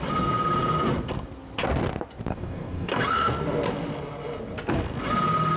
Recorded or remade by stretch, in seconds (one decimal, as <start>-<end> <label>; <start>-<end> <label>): 0.0-2.3 recorded; 2.3-2.9 remade; 2.9-5.6 recorded